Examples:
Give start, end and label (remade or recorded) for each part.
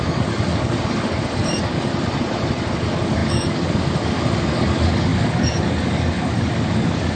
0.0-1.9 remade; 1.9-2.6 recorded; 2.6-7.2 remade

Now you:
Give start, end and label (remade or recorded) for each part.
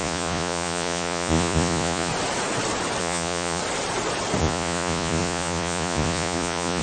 0.0-2.1 remade; 2.1-3.0 recorded; 3.0-3.6 remade; 3.6-4.4 recorded; 4.4-6.8 remade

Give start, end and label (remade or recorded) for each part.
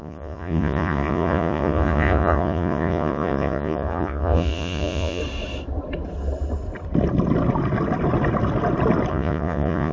0.0-5.2 remade; 5.2-9.1 recorded; 9.1-9.9 remade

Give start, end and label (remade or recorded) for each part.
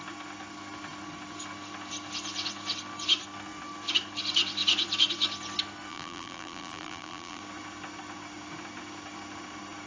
0.0-5.9 recorded; 5.9-7.4 remade; 7.4-9.9 recorded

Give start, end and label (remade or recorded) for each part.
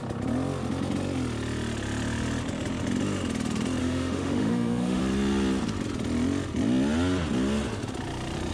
0.0-3.8 recorded; 3.8-5.0 remade; 5.0-8.5 recorded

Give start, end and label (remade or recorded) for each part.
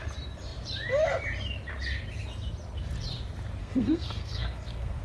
0.0-3.6 recorded; 3.6-5.0 remade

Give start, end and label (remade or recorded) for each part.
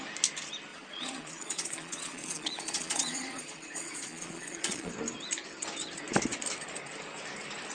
0.0-0.7 recorded; 0.7-4.9 remade; 4.9-7.7 recorded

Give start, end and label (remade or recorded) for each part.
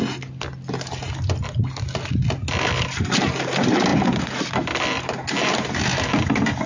0.0-6.7 recorded